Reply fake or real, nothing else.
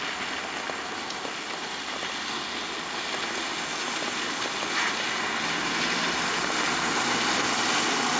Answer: real